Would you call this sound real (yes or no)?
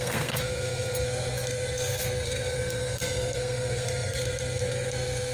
no